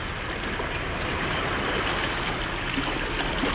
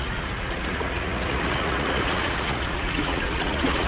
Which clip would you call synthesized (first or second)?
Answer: second